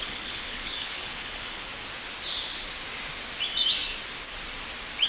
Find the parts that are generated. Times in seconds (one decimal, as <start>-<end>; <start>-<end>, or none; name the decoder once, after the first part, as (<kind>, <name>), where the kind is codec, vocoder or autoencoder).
0.0-1.7 (codec, HILCodec)